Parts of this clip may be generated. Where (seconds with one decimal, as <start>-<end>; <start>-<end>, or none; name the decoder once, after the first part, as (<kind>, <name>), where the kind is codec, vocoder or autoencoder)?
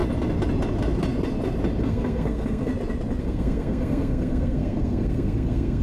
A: 1.8-2.7 (codec, SNAC); 3.2-5.8